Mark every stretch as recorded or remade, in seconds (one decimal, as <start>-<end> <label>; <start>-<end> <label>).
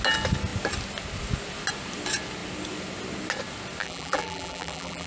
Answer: 0.0-3.8 recorded; 3.8-5.1 remade